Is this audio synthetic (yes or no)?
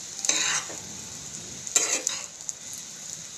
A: no